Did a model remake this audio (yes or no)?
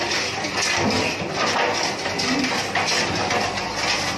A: no